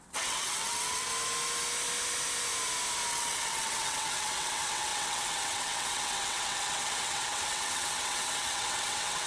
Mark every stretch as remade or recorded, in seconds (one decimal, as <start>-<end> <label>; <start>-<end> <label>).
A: 0.0-1.1 remade; 1.1-3.1 recorded; 3.1-9.3 remade